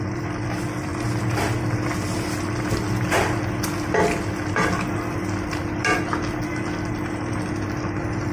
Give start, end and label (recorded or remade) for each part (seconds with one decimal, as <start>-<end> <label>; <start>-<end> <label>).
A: 0.0-8.3 recorded